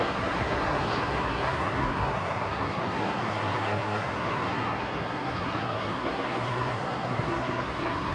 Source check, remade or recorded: remade